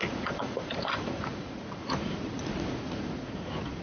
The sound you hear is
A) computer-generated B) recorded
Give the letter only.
A